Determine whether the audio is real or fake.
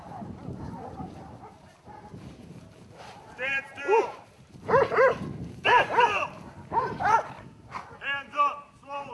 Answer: fake